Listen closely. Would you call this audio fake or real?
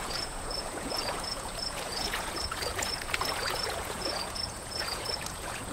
fake